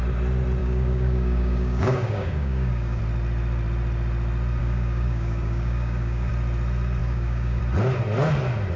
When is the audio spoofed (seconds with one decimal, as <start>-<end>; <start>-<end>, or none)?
0.6-3.0; 4.6-6.3; 7.0-7.6